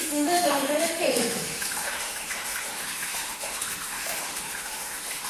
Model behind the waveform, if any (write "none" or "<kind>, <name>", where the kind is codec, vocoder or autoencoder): autoencoder, DAC-VAE